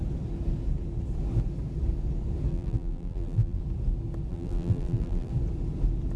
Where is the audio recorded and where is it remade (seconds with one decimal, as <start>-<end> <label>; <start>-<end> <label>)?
0.0-2.5 recorded; 2.5-3.6 remade; 3.6-4.3 recorded; 4.3-5.3 remade; 5.3-6.2 recorded